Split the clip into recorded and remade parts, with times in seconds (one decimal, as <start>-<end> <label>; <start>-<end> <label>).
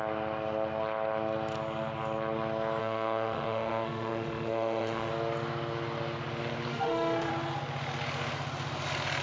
0.0-2.8 recorded; 2.8-5.1 remade; 5.1-6.7 recorded; 6.7-7.3 remade; 7.3-9.2 recorded